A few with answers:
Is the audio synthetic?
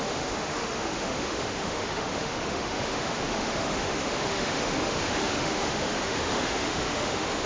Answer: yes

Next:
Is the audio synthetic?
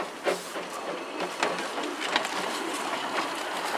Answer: no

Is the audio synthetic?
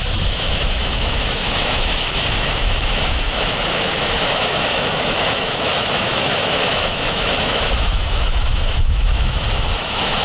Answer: yes